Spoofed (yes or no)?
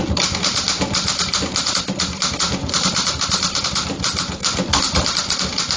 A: no